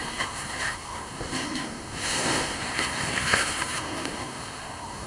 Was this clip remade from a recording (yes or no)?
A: yes